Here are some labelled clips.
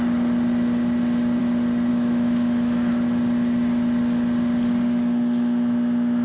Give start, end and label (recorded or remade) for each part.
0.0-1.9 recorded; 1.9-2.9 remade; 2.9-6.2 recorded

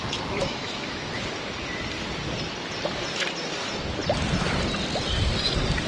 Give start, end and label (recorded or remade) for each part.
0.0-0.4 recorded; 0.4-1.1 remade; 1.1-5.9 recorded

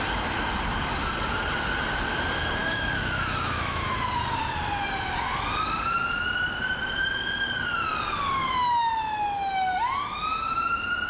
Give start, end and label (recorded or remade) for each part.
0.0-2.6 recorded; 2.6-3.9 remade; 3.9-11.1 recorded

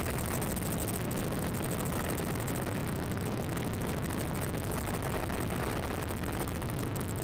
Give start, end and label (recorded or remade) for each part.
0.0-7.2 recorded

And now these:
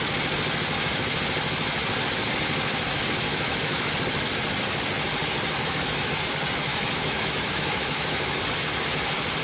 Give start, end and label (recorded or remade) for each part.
0.0-3.3 recorded; 3.3-3.9 remade; 3.9-5.6 recorded; 5.6-6.2 remade; 6.2-6.7 recorded; 6.7-8.4 remade; 8.4-9.4 recorded

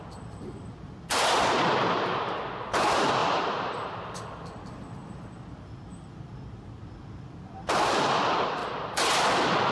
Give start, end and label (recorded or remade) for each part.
0.0-9.7 recorded